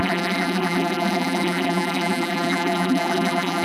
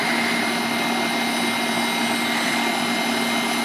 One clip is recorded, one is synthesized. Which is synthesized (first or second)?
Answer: first